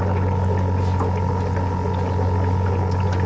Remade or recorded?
recorded